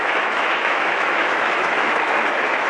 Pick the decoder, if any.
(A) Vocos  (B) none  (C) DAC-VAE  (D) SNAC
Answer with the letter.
C